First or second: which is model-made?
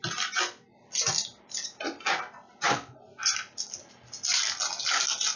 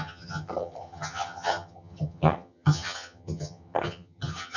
second